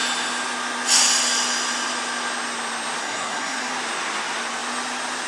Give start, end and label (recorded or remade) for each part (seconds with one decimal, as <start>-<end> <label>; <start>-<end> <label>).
0.0-3.0 recorded; 3.0-3.7 remade; 3.7-5.3 recorded

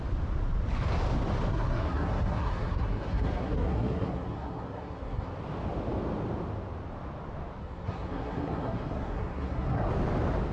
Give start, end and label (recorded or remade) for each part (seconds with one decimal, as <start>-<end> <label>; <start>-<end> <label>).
0.0-1.5 recorded; 1.5-5.3 remade; 5.3-7.6 recorded; 7.6-9.9 remade; 9.9-10.5 recorded